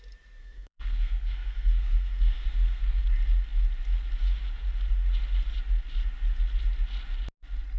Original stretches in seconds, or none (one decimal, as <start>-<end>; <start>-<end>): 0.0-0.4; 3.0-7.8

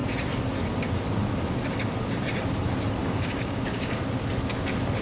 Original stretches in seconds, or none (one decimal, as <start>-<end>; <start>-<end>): 0.0-3.0; 4.0-5.0

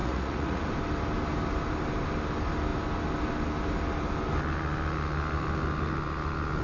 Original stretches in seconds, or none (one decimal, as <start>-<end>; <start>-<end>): 0.6-6.6

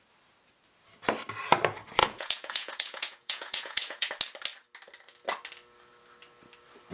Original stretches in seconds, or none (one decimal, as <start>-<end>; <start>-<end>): 0.0-2.0; 4.1-6.9

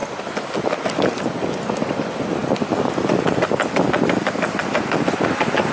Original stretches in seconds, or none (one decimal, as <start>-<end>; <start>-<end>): 0.0-2.4; 4.6-5.7

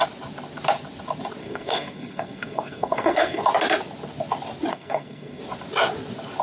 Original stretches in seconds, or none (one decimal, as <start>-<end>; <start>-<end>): 0.0-1.4; 3.4-4.7; 5.4-6.4

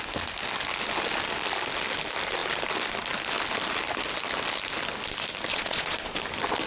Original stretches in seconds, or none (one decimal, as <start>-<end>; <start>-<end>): 0.0-5.5; 6.2-6.7

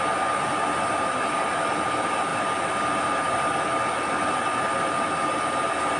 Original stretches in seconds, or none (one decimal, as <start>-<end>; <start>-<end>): 0.0-6.0